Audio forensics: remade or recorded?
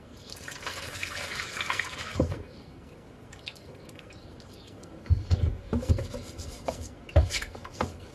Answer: remade